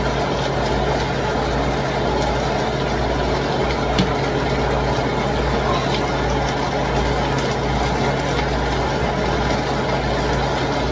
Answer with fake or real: real